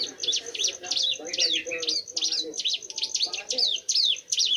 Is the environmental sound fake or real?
real